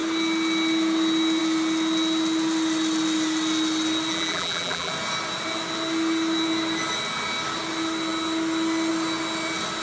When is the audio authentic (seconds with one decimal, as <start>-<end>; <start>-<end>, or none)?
0.0-4.1; 4.9-9.8